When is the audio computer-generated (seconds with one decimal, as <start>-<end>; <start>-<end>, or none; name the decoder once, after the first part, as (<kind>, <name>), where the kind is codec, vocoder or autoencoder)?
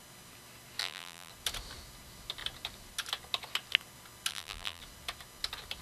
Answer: 0.8-1.3 (vocoder, BigVGAN v2); 4.3-4.8